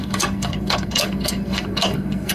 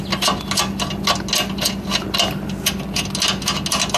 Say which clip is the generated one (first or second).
first